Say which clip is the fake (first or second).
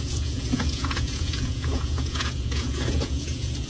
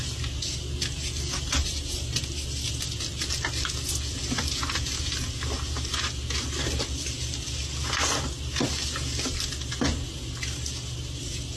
first